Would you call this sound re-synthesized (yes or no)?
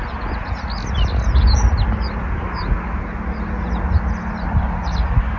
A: no